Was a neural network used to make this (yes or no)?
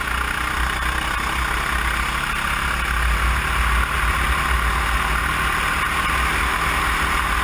no